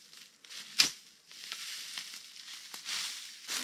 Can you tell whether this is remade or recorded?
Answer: recorded